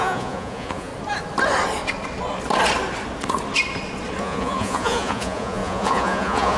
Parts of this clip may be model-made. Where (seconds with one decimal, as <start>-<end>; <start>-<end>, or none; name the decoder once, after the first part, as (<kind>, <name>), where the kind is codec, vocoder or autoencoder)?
0.0-0.9 (vocoder, Vocos); 4.2-6.6

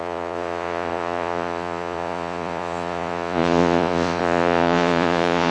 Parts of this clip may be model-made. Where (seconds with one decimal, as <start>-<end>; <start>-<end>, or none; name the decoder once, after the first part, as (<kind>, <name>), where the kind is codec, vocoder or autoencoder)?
0.0-5.5 (vocoder, Vocos)

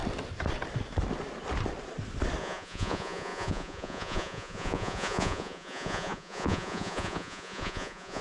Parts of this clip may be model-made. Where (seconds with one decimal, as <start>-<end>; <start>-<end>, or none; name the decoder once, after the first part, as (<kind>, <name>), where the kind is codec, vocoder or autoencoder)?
2.4-8.2 (vocoder, Vocos)

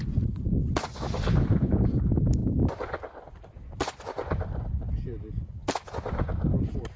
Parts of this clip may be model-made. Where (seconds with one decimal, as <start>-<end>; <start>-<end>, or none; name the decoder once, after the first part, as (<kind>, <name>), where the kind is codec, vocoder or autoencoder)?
none

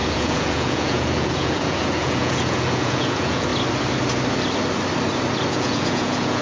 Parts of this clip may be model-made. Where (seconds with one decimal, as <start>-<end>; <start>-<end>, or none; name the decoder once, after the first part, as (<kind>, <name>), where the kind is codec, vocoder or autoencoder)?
0.0-3.5 (vocoder, Vocos); 5.5-6.4

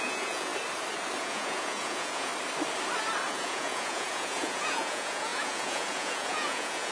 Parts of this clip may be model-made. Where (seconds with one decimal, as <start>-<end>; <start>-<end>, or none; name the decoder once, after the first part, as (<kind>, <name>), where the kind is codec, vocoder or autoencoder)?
0.0-0.5 (vocoder, Vocos); 1.2-2.3; 3.3-6.9

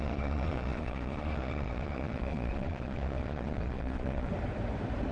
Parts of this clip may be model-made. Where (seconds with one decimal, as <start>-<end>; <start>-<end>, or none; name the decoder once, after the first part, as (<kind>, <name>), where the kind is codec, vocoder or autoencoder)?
0.0-4.3 (vocoder, Vocos)

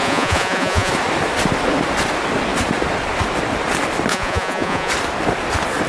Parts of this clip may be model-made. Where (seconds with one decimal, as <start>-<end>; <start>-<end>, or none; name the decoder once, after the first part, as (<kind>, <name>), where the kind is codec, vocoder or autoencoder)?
0.0-0.9 (vocoder, Vocos); 4.1-4.9